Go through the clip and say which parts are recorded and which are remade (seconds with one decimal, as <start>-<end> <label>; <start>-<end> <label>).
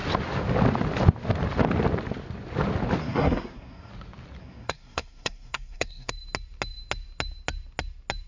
0.0-3.0 recorded; 3.0-3.9 remade; 3.9-4.4 recorded; 4.4-6.1 remade; 6.1-8.3 recorded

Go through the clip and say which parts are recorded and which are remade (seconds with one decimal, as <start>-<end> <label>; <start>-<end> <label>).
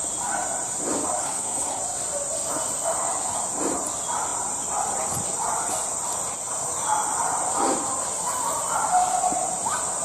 0.0-1.2 recorded; 1.2-1.8 remade; 1.8-10.0 recorded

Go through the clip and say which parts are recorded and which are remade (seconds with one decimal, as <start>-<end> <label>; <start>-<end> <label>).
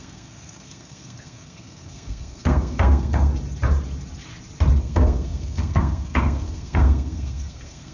0.0-3.3 remade; 3.3-4.8 recorded; 4.8-7.9 remade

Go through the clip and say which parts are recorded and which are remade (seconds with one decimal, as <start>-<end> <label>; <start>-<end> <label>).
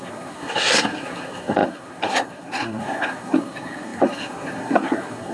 0.0-5.3 remade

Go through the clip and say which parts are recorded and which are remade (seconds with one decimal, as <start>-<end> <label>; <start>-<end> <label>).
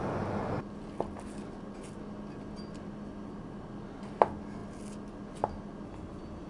0.0-6.5 recorded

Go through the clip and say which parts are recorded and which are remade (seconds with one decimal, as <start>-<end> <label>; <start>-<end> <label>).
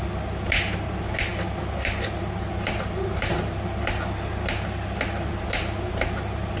0.0-6.6 recorded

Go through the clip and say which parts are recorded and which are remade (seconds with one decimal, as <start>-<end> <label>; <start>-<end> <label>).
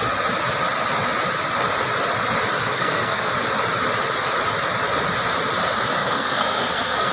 0.0-2.6 recorded; 2.6-3.3 remade; 3.3-6.0 recorded; 6.0-7.1 remade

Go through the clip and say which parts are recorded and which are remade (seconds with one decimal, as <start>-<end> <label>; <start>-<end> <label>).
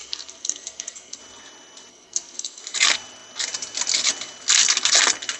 0.0-1.2 remade; 1.2-1.9 recorded; 1.9-2.6 remade; 2.6-5.4 recorded